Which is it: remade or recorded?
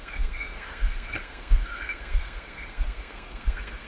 remade